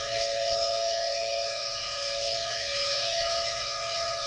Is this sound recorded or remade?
remade